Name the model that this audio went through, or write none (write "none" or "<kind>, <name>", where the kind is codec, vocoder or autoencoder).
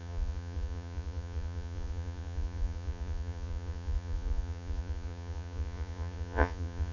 vocoder, Vocos